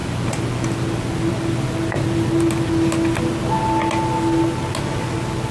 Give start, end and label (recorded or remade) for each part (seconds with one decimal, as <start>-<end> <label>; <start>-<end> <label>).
0.0-5.5 recorded